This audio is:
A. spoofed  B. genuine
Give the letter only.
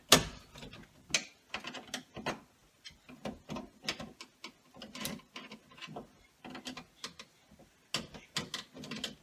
B